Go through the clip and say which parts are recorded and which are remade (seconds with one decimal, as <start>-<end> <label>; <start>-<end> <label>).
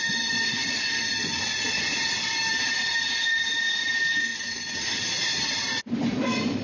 0.0-0.6 remade; 0.6-1.8 recorded; 1.8-6.6 remade